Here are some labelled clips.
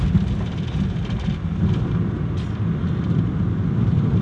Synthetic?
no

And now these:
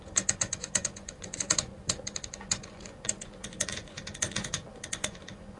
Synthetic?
yes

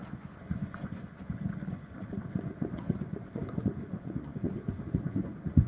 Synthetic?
yes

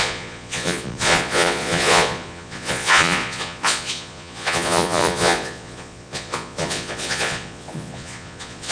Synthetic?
yes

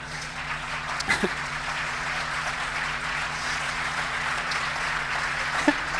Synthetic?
yes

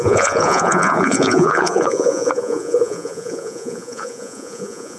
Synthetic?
yes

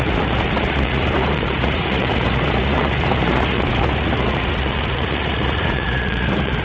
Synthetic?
yes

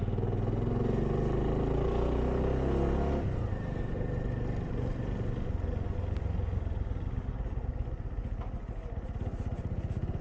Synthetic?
no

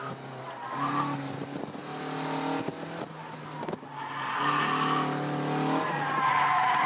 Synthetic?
no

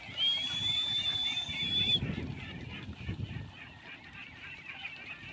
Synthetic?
no